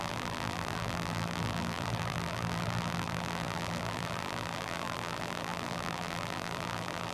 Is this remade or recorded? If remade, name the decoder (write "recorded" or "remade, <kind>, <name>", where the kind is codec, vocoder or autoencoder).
remade, vocoder, BigVGAN v2